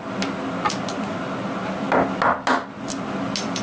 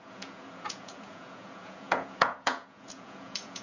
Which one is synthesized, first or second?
second